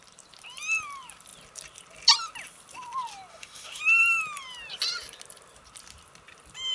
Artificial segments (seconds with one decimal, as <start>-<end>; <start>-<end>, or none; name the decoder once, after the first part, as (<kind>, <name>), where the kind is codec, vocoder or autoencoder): 3.3-3.8 (autoencoder, DAC-VAE)